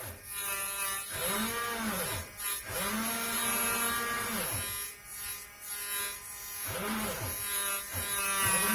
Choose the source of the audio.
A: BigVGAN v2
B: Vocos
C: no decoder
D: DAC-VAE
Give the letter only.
C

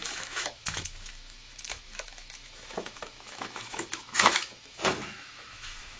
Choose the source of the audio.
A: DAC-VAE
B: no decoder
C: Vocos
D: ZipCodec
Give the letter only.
A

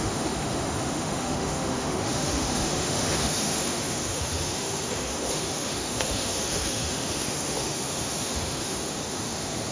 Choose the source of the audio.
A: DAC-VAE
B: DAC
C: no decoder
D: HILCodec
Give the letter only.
A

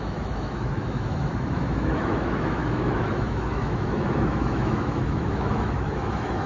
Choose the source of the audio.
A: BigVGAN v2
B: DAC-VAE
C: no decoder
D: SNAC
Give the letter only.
B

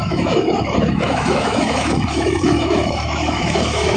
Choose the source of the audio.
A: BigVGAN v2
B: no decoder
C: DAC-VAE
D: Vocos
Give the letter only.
C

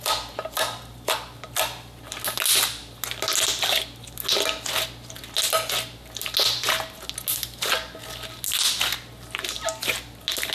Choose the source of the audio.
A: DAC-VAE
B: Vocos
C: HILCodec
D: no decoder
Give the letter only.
D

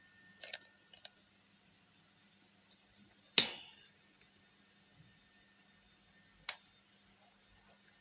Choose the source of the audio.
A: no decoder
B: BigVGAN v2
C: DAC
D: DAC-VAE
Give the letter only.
A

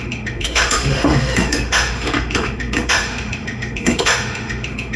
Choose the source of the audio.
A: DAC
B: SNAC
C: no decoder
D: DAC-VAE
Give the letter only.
D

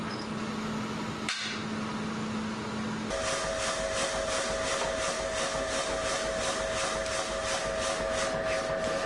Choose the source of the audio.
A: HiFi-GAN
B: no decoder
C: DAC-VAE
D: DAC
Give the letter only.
B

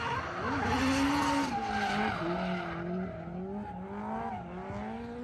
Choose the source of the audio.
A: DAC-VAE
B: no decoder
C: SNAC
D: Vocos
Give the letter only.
B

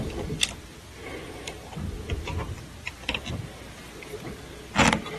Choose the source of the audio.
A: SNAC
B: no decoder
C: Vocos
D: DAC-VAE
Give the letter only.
B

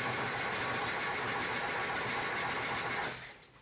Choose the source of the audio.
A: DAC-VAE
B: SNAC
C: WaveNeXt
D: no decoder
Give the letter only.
D